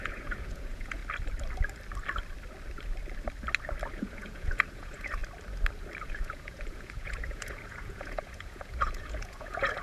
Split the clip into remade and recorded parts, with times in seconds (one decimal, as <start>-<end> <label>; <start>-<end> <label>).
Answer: 0.0-1.0 remade; 1.0-3.9 recorded; 3.9-5.2 remade; 5.2-6.0 recorded; 6.0-9.8 remade